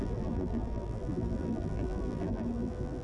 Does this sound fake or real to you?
fake